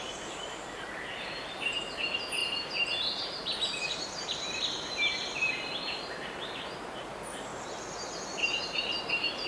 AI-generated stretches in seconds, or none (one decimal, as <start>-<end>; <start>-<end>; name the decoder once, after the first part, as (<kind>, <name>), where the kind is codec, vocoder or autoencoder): 0.0-7.5 (vocoder, BigVGAN v2); 9.1-9.5